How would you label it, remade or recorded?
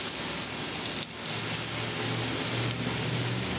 recorded